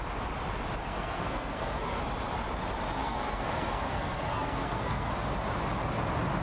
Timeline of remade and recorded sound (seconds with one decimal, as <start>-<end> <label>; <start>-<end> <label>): 0.0-0.8 recorded; 0.8-2.0 remade; 2.0-3.0 recorded; 3.0-5.1 remade; 5.1-6.4 recorded